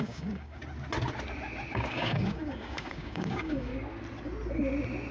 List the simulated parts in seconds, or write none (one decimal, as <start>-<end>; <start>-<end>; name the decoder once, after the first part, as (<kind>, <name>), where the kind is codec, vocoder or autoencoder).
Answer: 0.0-0.6 (codec, DAC); 1.7-3.7